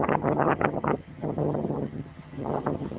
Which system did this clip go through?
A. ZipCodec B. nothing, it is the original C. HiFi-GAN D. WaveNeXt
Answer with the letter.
C